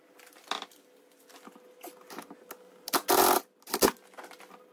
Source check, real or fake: real